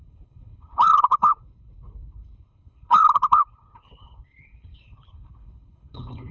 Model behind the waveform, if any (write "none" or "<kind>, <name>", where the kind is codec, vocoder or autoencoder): codec, HILCodec